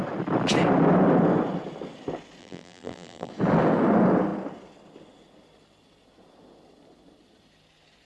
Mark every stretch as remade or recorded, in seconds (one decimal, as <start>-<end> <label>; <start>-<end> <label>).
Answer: 0.0-2.4 recorded; 2.4-3.3 remade; 3.3-8.0 recorded